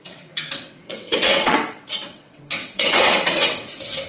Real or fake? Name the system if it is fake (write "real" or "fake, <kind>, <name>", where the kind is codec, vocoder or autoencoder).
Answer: fake, vocoder, WaveNeXt